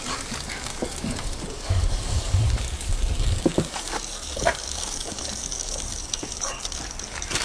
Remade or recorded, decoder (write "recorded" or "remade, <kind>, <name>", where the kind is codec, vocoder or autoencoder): remade, codec, DAC